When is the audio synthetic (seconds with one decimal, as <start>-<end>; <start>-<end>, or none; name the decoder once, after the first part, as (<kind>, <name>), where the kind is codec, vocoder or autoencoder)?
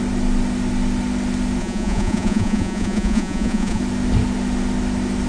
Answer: 1.6-3.8 (vocoder, Vocos)